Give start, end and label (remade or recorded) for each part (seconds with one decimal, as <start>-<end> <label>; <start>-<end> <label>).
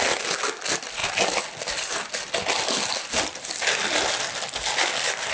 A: 0.0-5.3 recorded